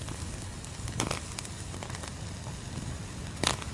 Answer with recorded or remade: recorded